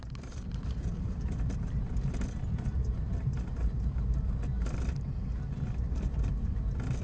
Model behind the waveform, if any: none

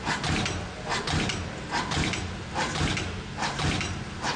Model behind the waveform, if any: none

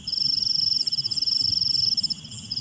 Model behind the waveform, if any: none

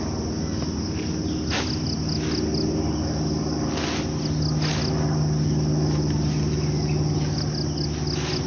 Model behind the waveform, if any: none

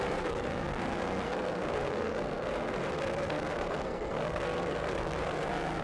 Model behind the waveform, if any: codec, SNAC